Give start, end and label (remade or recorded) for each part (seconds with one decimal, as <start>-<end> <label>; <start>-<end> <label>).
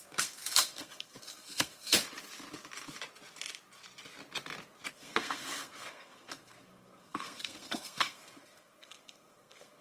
0.0-1.9 remade; 1.9-4.9 recorded; 4.9-9.8 remade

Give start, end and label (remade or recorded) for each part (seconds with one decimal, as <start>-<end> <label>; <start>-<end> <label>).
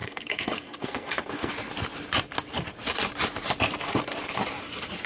0.0-1.5 remade; 1.5-5.1 recorded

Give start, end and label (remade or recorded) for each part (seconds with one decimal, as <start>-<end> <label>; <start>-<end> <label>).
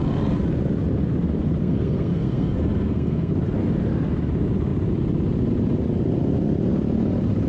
0.0-1.6 recorded; 1.6-3.3 remade; 3.3-7.5 recorded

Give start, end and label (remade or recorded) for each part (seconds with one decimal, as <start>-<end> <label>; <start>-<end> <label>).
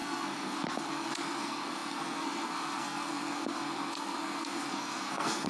0.0-5.5 remade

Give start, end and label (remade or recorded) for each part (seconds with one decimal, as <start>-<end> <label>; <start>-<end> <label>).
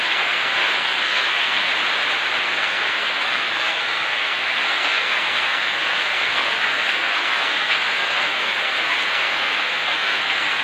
0.0-1.7 remade; 1.7-2.4 recorded; 2.4-10.6 remade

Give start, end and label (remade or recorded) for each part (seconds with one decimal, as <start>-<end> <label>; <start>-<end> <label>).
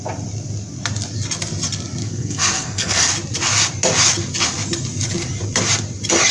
0.0-2.0 recorded; 2.0-3.1 remade; 3.1-6.3 recorded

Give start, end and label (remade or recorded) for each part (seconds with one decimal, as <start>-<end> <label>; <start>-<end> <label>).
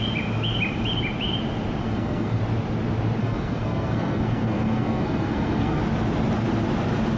0.0-1.8 recorded; 1.8-2.4 remade; 2.4-3.2 recorded; 3.2-5.8 remade; 5.8-7.2 recorded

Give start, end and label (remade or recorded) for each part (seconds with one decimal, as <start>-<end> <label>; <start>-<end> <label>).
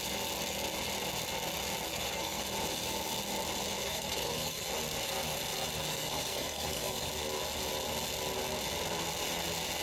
0.0-1.9 recorded; 1.9-2.4 remade; 2.4-3.8 recorded; 3.8-4.7 remade; 4.7-5.9 recorded; 5.9-7.1 remade; 7.1-9.8 recorded